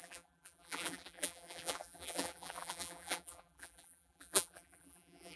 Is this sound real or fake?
fake